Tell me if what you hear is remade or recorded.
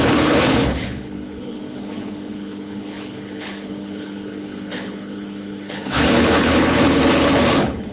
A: remade